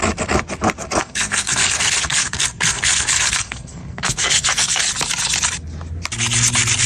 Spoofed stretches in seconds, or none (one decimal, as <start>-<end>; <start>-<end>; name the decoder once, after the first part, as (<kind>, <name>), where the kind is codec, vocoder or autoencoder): 1.0-4.8 (codec, SNAC)